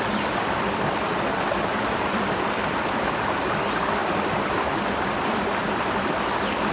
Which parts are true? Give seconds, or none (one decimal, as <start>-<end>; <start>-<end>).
0.0-6.7